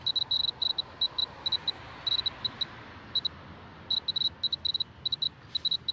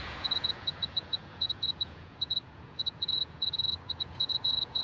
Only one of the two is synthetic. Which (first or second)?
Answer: second